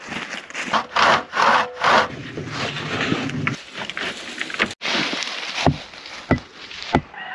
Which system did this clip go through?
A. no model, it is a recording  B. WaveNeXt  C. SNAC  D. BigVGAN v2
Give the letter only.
A